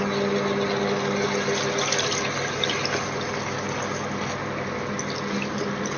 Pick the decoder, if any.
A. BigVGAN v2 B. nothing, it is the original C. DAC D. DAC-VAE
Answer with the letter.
B